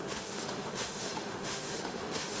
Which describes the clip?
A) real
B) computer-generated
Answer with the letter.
B